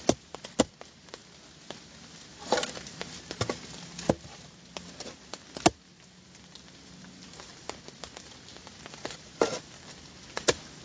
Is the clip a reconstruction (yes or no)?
no